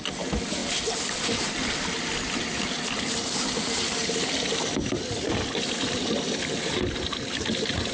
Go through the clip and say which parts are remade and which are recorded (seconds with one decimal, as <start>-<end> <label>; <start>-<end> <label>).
0.0-7.9 recorded